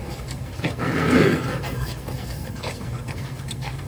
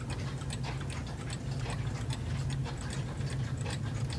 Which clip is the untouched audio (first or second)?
second